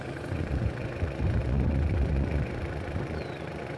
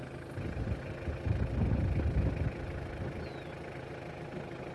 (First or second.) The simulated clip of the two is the first